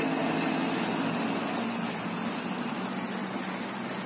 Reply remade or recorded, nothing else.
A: recorded